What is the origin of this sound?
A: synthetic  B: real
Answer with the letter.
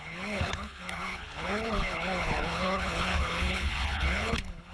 A